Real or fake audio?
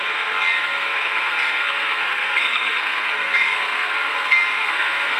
fake